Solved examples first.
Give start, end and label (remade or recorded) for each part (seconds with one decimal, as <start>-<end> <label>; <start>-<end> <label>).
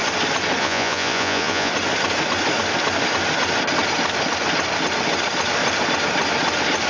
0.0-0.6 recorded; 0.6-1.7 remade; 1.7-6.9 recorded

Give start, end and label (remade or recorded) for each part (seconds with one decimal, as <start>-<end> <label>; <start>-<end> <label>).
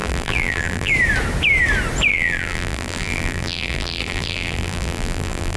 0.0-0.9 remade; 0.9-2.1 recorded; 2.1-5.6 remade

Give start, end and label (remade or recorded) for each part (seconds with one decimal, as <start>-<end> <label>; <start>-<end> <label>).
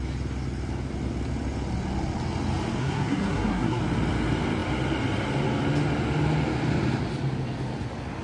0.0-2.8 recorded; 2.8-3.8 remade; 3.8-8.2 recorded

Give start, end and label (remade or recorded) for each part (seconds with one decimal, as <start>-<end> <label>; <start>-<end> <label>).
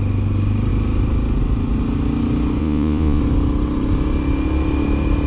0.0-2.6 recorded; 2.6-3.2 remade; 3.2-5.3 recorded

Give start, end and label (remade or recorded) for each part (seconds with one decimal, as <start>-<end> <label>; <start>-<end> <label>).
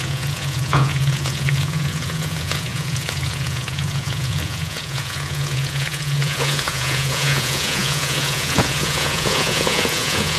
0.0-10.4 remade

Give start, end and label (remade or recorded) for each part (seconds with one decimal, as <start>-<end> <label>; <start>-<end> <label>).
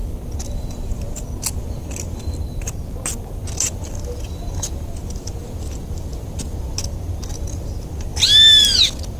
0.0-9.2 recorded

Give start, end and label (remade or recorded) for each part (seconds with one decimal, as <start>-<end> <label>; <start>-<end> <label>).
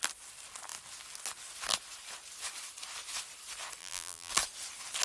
0.0-3.8 recorded; 3.8-4.3 remade; 4.3-5.0 recorded